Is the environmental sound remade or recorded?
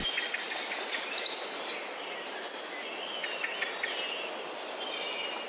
recorded